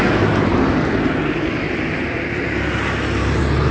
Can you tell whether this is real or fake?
real